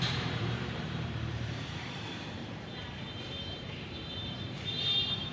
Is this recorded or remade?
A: remade